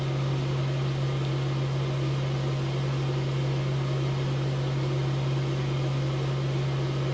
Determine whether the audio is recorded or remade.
recorded